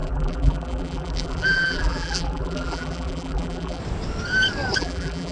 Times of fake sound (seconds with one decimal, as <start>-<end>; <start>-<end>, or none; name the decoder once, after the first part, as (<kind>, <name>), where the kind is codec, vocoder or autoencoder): 0.0-3.8 (vocoder, BigVGAN v2); 4.8-5.3